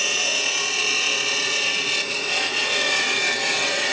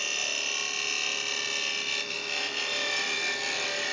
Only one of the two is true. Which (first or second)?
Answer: second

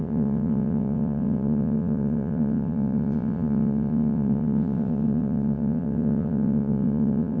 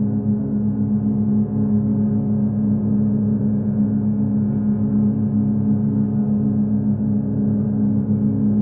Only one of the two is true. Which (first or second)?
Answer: second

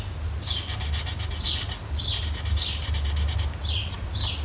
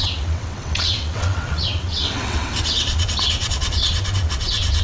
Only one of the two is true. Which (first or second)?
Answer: first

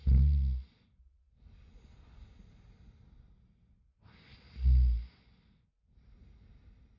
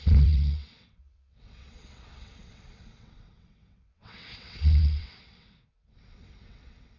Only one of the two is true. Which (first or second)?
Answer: first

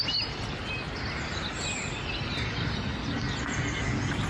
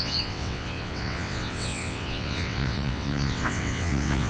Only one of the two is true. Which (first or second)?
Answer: first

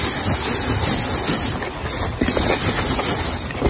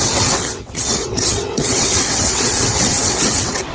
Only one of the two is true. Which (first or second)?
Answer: first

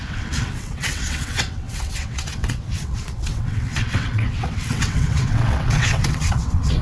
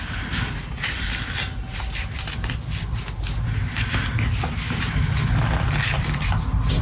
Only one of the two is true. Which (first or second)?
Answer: second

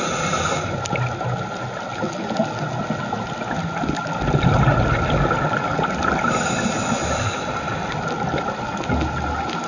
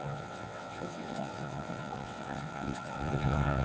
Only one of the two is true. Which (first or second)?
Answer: first